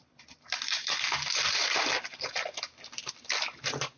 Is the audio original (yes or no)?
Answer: yes